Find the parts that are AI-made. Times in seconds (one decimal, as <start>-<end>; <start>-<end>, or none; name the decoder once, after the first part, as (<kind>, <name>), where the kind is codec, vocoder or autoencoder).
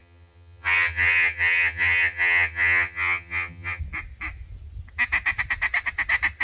0.0-3.8 (vocoder, HiFi-GAN)